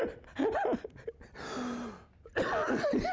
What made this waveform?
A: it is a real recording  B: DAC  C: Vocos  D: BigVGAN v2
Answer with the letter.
A